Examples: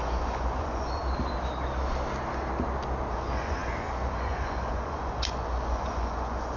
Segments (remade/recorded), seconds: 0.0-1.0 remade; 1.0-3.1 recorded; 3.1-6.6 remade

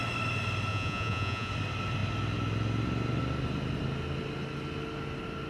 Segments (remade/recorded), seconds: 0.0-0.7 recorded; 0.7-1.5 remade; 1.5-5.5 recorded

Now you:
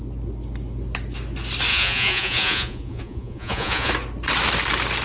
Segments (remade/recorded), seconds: 0.0-1.7 recorded; 1.7-3.9 remade; 3.9-5.0 recorded

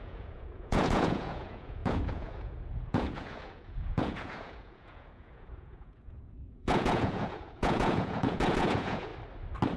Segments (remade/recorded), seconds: 0.0-9.1 remade; 9.1-9.8 recorded